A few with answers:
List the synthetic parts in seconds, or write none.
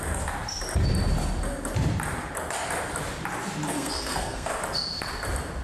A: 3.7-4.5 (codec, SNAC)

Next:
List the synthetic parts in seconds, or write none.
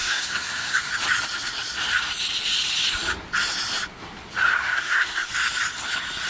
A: 0.0-0.9 (codec, SNAC); 4.4-5.3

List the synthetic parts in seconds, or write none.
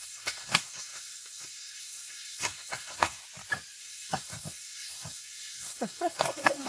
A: 0.0-3.2 (codec, SNAC); 3.8-6.7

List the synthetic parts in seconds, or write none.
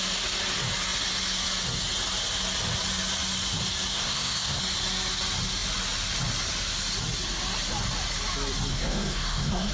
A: 3.9-4.6 (codec, SNAC); 8.7-9.7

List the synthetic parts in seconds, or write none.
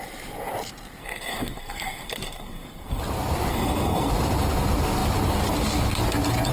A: 1.0-3.0 (codec, SNAC); 3.5-4.1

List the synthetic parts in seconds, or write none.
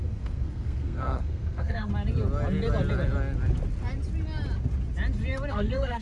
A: 0.0-1.9 (codec, SNAC); 5.5-6.0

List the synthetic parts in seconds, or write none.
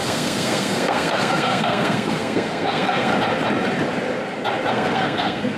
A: 0.0-3.1 (codec, SNAC); 4.7-5.6